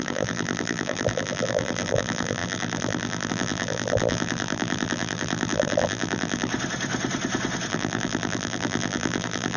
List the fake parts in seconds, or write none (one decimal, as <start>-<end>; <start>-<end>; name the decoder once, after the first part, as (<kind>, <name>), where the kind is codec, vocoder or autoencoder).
0.0-6.5 (vocoder, BigVGAN v2); 7.7-9.6